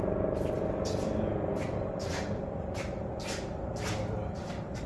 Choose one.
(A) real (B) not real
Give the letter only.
A